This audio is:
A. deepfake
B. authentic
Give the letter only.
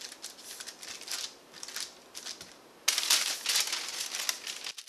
B